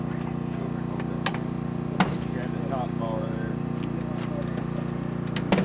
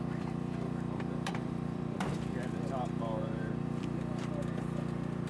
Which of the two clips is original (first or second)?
first